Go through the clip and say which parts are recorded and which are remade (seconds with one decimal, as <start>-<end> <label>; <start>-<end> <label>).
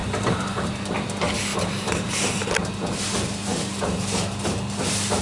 0.0-0.7 remade; 0.7-1.5 recorded; 1.5-2.4 remade; 2.4-3.5 recorded; 3.5-5.2 remade